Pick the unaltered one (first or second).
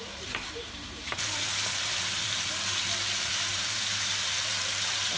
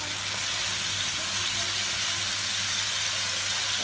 second